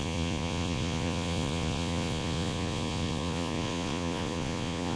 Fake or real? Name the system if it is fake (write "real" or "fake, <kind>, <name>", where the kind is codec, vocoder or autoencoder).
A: fake, vocoder, Vocos